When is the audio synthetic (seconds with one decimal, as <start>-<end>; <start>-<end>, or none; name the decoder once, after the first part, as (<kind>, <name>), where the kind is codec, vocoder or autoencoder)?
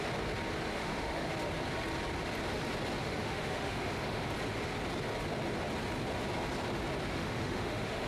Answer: 0.7-1.3 (autoencoder, DAC-VAE); 3.0-4.3; 7.1-8.1